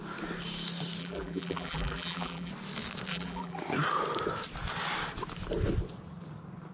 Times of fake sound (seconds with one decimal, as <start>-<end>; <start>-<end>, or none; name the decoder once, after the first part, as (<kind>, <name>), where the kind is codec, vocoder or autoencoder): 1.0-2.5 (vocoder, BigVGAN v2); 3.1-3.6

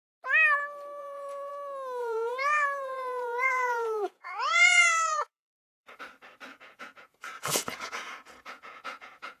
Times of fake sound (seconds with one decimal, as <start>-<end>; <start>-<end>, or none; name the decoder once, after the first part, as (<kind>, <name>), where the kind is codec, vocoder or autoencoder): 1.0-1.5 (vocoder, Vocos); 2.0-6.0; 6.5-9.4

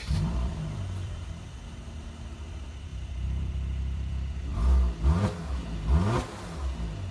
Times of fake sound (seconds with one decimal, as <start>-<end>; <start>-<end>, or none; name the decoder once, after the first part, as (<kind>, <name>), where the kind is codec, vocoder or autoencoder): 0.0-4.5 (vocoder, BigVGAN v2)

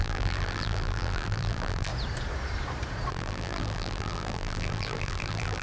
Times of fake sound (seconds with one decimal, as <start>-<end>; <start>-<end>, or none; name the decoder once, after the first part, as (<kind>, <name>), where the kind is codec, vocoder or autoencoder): 0.0-1.9 (vocoder, BigVGAN v2); 3.1-5.6